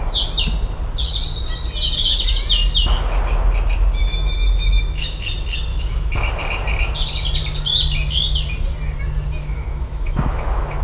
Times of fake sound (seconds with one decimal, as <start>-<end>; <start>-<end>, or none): 4.0-5.2; 5.7-6.3; 9.4-10.8